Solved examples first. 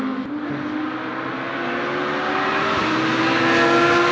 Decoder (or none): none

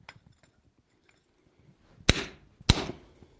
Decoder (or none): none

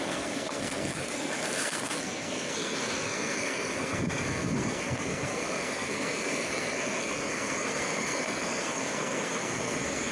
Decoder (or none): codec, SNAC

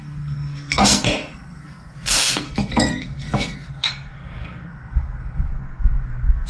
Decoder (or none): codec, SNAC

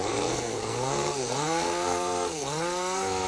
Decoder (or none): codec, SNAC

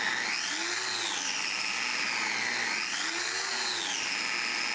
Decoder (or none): none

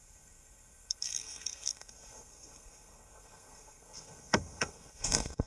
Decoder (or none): codec, SNAC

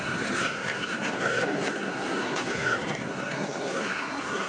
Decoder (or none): codec, SNAC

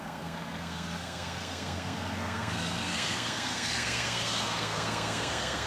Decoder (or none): codec, SNAC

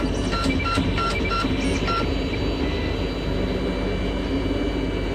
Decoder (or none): none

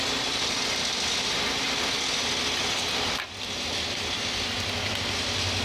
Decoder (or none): none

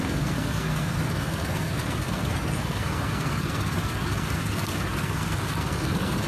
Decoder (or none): codec, SNAC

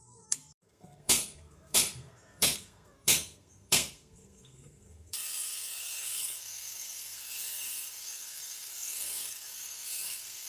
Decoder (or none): codec, SNAC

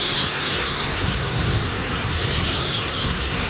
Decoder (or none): codec, SNAC